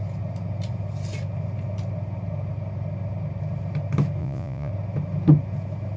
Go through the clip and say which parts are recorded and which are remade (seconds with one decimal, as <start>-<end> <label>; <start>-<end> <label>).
0.0-4.2 recorded; 4.2-4.7 remade; 4.7-6.0 recorded